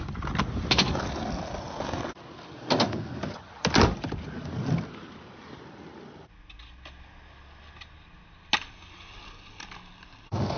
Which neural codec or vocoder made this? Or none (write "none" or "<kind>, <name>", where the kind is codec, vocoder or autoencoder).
none